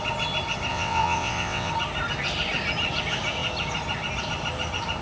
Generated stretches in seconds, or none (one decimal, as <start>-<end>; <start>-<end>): 0.7-1.7